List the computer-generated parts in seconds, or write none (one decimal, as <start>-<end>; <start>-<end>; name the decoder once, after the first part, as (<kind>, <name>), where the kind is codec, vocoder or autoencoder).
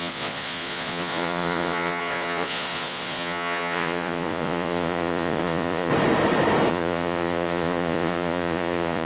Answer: 0.0-5.9 (vocoder, Vocos); 6.7-9.1